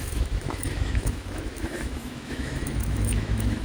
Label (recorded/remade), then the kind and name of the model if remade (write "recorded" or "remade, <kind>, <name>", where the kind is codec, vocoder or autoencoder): remade, autoencoder, DAC-VAE